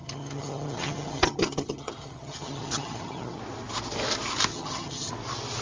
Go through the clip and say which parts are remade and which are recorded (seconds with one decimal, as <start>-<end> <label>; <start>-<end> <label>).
0.0-3.4 remade; 3.4-4.5 recorded; 4.5-5.1 remade; 5.1-5.6 recorded